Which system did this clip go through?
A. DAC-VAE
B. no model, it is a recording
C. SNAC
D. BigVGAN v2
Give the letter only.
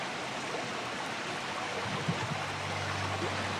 B